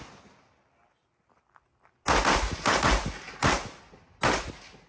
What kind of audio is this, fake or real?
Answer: real